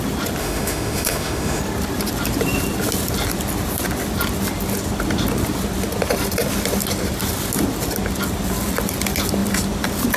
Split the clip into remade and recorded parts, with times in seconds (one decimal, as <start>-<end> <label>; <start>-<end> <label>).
0.0-0.4 recorded; 0.4-1.6 remade; 1.6-10.2 recorded

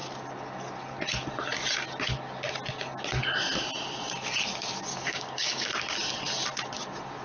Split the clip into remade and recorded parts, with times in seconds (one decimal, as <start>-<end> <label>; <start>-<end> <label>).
0.0-4.9 recorded; 4.9-5.7 remade; 5.7-7.2 recorded